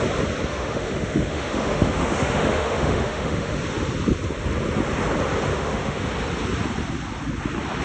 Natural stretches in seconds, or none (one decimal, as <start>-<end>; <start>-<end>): 0.0-0.5; 3.6-5.5; 6.1-7.8